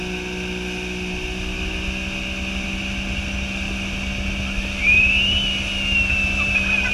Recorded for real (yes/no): yes